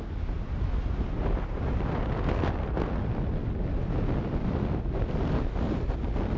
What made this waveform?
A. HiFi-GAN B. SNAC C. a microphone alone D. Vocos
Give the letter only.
C